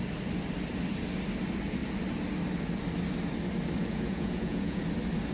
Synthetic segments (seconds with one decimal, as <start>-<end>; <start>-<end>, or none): 3.8-4.8